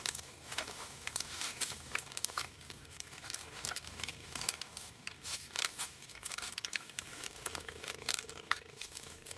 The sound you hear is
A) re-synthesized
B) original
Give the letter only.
A